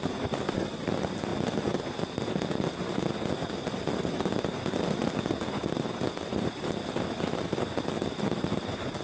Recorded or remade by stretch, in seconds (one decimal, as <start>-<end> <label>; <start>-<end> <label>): 0.0-1.3 remade; 1.3-4.9 recorded; 4.9-9.0 remade